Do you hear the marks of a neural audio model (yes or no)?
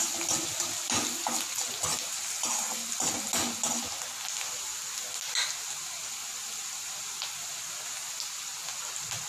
no